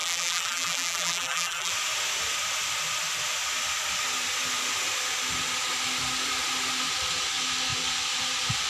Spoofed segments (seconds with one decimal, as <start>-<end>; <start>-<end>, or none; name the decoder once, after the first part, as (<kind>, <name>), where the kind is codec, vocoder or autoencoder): 0.0-1.7 (vocoder, BigVGAN v2)